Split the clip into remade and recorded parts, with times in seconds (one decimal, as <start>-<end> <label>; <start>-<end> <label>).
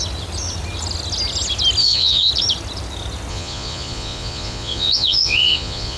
0.0-1.8 recorded; 1.8-2.3 remade; 2.3-3.3 recorded; 3.3-6.0 remade